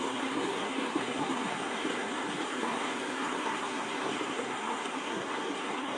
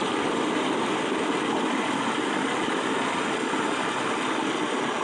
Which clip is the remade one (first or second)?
first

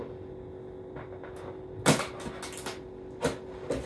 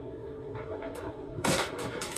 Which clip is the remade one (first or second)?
second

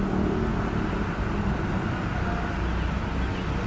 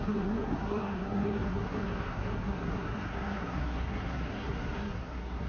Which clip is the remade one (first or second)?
second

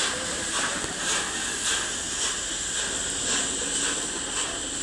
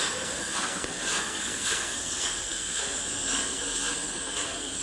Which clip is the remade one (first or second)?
second